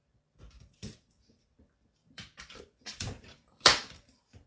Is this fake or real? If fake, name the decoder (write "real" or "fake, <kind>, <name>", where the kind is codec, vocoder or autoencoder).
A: fake, vocoder, BigVGAN v2